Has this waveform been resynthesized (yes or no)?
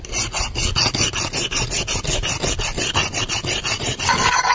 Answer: no